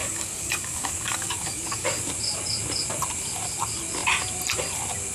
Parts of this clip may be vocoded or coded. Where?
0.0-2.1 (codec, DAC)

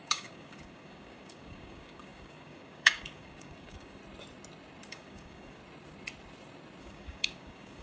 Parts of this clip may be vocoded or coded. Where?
0.0-4.0 (codec, DAC); 4.9-5.6; 6.8-7.8

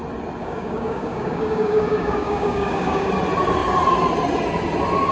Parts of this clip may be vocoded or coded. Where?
0.4-3.1 (codec, DAC)

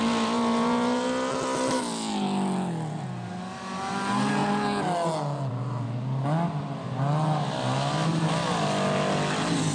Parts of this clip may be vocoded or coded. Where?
none

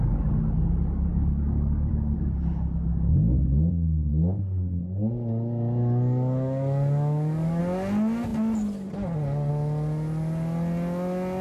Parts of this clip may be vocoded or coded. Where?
1.1-1.9 (codec, DAC); 2.9-7.6

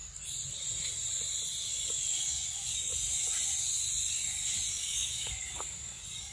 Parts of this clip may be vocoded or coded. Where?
1.7-2.9 (codec, DAC); 4.7-6.3